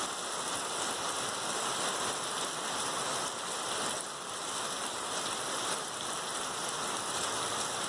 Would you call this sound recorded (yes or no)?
yes